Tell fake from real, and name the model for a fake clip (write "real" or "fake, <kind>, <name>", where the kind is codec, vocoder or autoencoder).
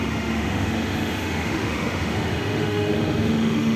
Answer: fake, autoencoder, DAC-VAE